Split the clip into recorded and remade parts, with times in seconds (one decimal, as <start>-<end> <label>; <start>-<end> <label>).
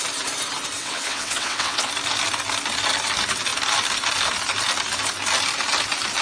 0.0-0.8 recorded; 0.8-1.9 remade; 1.9-6.2 recorded